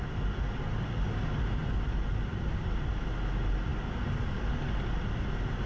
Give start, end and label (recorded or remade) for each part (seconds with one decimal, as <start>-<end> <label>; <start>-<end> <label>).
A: 0.0-5.7 recorded